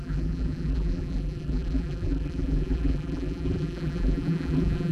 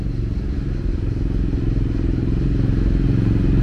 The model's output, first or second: first